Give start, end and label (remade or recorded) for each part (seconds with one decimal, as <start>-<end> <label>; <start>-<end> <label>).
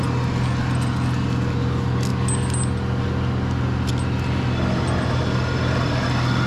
0.0-6.5 recorded